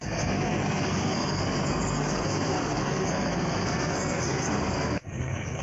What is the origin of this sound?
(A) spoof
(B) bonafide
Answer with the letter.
A